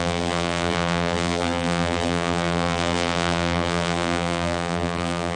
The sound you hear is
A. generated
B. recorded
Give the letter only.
A